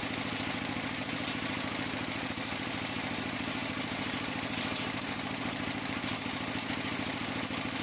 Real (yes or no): no